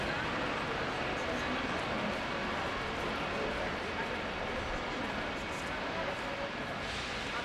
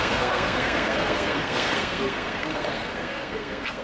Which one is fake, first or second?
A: second